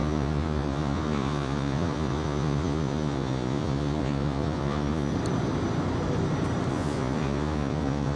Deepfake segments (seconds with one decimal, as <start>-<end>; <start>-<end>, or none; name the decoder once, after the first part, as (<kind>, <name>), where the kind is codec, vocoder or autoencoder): 0.0-5.1 (vocoder, Vocos); 6.7-8.2